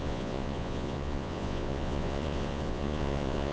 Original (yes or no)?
no